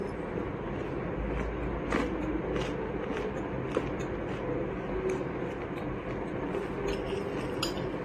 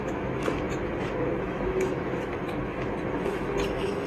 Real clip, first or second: first